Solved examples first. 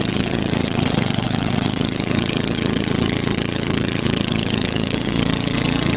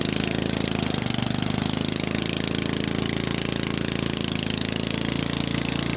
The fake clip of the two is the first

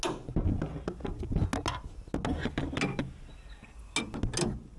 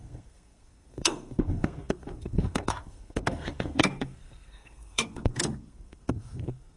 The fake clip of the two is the second